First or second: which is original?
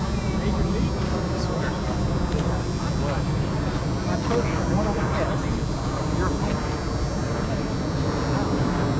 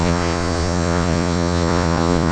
first